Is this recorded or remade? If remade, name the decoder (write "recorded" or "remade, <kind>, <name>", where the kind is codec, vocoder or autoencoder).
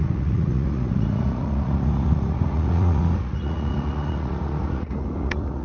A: remade, vocoder, Vocos